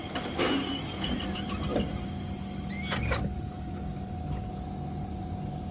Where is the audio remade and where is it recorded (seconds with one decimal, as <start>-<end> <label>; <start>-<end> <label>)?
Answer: 0.0-5.7 recorded